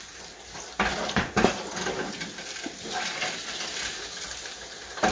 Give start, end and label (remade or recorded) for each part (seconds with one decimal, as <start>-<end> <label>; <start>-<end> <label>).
0.0-5.1 recorded